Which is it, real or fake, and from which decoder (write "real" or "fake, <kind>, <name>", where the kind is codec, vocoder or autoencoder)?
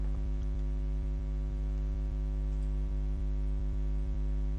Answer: fake, vocoder, BigVGAN v2